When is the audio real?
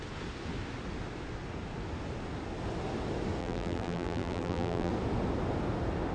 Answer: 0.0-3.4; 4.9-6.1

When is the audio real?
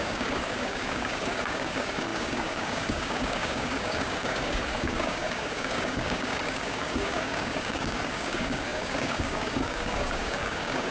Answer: none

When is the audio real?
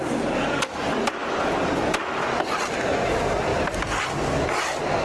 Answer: 0.0-5.0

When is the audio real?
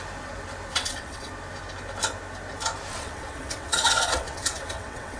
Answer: 0.0-0.7; 1.3-2.9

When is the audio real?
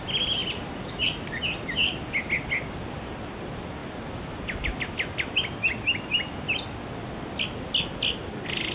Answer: 0.0-8.7